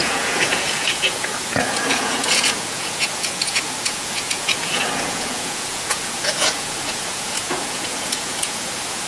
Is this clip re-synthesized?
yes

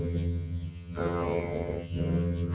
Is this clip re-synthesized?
yes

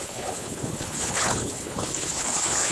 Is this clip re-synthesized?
yes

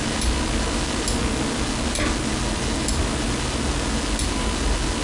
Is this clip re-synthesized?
no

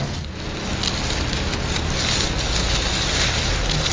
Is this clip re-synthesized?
no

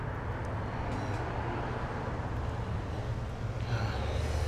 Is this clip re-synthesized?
no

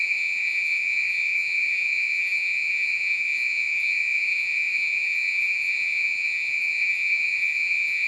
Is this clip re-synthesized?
yes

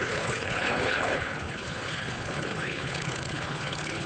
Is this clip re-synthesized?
yes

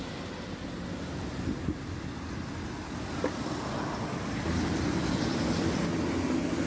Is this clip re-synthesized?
no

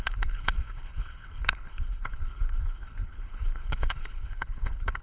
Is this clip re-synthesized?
yes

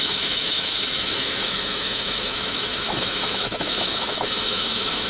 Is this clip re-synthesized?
yes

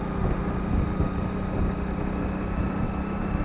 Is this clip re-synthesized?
no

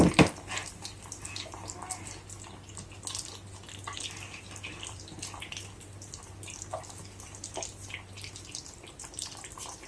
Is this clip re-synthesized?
no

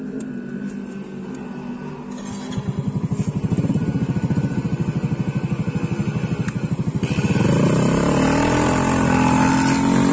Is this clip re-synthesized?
no